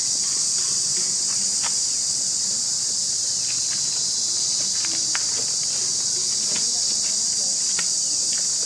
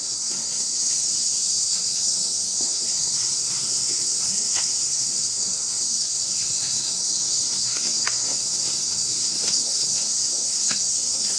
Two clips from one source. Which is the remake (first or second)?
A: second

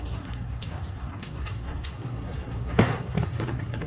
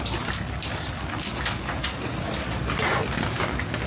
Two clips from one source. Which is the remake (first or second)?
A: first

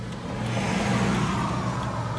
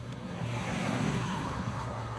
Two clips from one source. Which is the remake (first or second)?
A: second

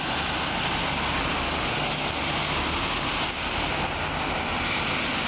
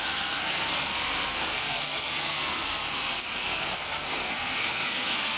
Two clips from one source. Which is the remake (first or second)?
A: second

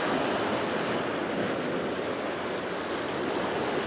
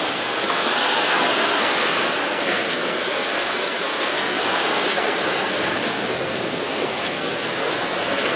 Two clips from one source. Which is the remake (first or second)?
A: second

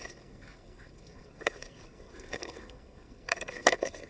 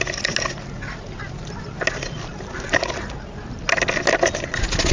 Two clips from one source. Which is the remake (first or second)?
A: first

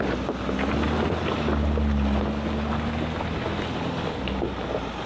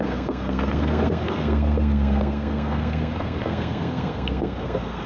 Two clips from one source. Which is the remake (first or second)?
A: second